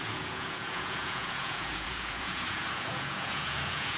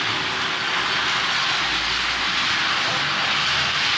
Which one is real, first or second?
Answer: second